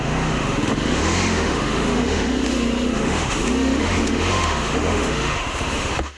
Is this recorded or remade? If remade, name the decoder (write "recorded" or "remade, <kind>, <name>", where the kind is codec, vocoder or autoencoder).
remade, autoencoder, DAC-VAE